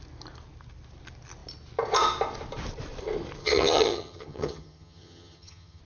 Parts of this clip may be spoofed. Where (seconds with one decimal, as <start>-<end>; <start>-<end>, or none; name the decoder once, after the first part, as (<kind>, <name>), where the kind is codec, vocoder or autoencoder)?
3.4-5.8 (vocoder, HiFi-GAN)